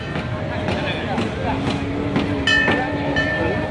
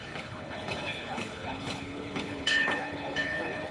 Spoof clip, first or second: second